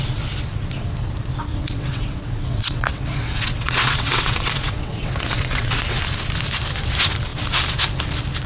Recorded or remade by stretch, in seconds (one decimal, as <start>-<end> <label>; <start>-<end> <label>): 0.0-1.5 recorded; 1.5-6.0 remade; 6.0-8.5 recorded